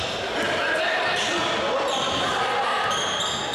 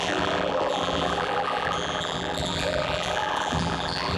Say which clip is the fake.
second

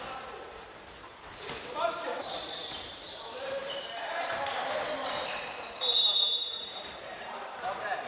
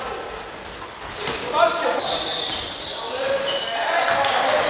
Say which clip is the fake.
first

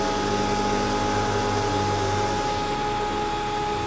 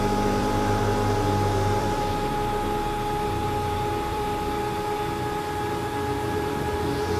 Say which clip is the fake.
second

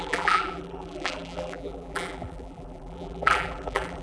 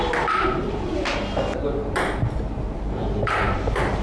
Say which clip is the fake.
first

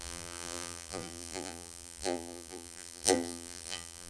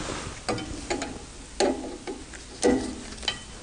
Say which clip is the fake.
first